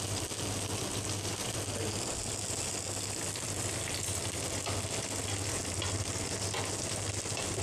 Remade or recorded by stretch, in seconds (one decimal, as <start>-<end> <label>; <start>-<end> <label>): 0.0-7.6 recorded